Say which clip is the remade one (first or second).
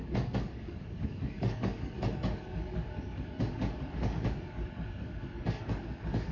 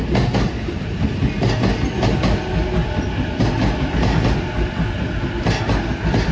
first